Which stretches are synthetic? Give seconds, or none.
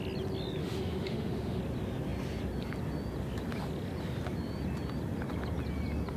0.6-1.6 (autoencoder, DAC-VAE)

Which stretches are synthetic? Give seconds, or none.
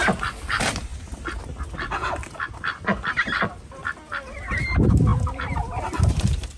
none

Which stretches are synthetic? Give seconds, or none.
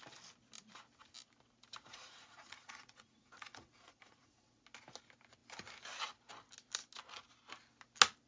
1.9-4.6 (vocoder, Vocos)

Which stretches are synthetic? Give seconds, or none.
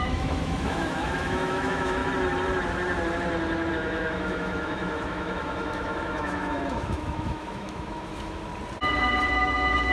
0.0-2.0 (autoencoder, DAC-VAE); 3.7-8.5; 9.3-9.9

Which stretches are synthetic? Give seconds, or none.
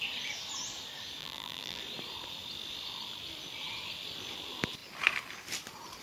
1.2-1.8 (vocoder, BigVGAN v2)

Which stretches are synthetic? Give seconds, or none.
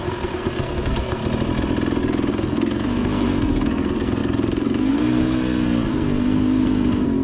0.0-1.2 (codec, SNAC); 2.3-7.2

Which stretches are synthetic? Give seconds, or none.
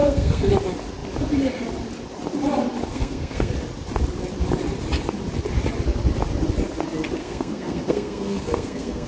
0.0-0.5 (codec, SNAC); 2.9-3.5; 7.2-9.1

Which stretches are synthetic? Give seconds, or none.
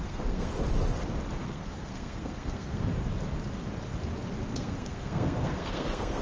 0.0-0.5 (codec, SNAC); 1.4-2.9; 4.5-6.2